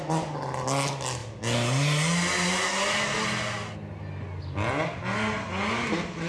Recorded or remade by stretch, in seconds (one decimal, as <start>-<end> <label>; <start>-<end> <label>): 0.0-6.3 recorded